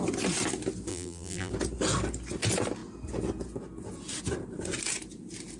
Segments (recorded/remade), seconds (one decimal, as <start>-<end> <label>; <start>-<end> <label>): 0.0-0.9 recorded; 0.9-1.5 remade; 1.5-5.6 recorded